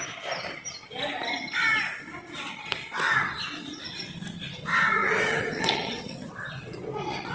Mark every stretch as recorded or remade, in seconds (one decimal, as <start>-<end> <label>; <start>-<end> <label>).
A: 0.0-5.0 recorded; 5.0-7.3 remade